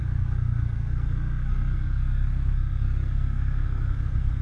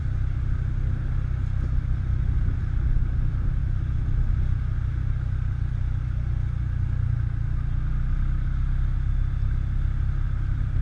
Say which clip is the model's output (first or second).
first